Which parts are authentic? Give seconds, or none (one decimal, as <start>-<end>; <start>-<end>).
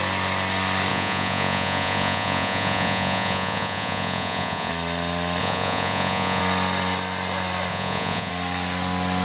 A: 0.0-0.9; 4.7-5.4; 6.4-7.7; 8.3-9.2